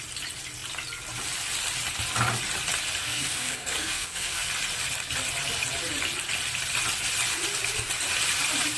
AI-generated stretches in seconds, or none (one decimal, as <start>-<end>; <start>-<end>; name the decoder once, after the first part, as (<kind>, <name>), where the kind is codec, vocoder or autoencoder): 3.0-4.5 (codec, SNAC)